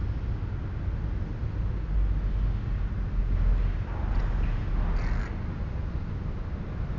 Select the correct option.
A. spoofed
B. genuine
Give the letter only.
B